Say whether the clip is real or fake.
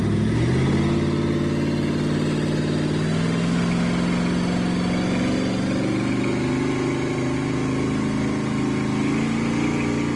real